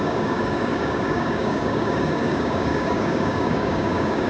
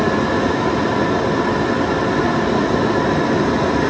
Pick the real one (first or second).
second